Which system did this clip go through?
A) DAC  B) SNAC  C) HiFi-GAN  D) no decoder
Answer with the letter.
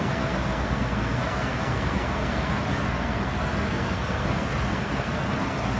B